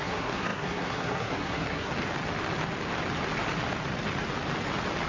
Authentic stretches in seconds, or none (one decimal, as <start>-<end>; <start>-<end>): 1.9-5.1